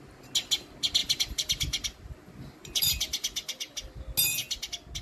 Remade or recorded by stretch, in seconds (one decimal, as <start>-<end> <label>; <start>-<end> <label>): 0.0-1.0 recorded; 1.0-4.0 remade; 4.0-5.0 recorded